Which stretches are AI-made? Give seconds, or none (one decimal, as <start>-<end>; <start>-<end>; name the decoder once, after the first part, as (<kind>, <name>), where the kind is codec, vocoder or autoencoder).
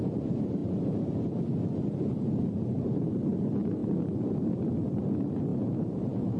0.0-3.8 (vocoder, BigVGAN v2); 5.0-6.4